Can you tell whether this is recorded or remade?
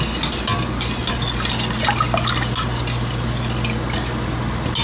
recorded